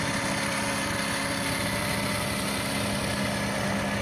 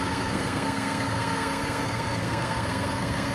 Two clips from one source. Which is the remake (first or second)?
second